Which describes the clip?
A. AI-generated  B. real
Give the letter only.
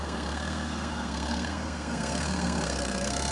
A